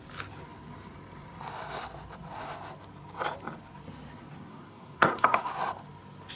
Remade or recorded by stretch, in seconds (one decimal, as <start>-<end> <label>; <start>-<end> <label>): 0.0-4.5 recorded; 4.5-5.5 remade; 5.5-6.4 recorded